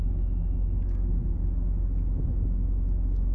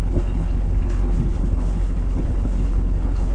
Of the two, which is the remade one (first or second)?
second